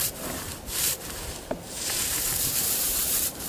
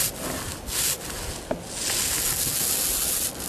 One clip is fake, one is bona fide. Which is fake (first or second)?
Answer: first